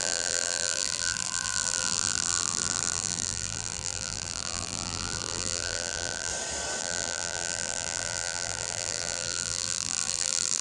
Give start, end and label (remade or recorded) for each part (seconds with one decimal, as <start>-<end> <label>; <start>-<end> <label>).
0.0-6.3 remade; 6.3-6.8 recorded; 6.8-10.6 remade